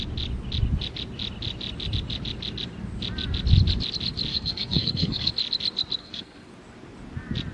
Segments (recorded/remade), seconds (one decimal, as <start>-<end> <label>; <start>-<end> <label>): 0.0-4.3 recorded; 4.3-5.3 remade; 5.3-6.0 recorded; 6.0-6.5 remade; 6.5-7.5 recorded